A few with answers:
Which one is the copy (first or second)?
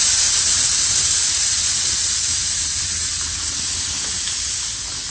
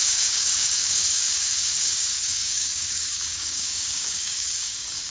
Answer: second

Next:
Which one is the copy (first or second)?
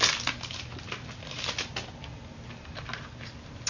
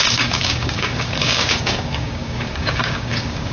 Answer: second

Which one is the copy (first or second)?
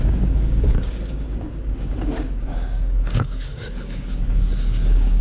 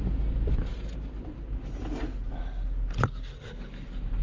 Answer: first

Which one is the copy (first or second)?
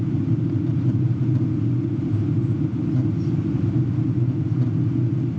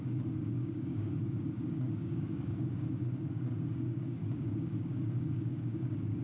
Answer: second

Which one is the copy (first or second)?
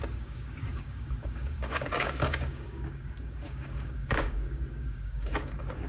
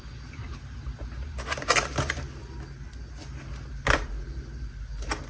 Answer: first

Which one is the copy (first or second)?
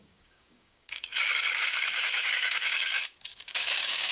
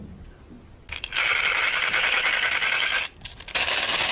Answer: first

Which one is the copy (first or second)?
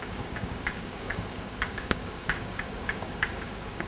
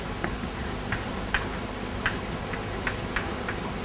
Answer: first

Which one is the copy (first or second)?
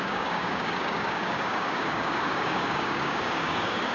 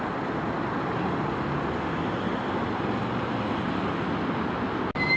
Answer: first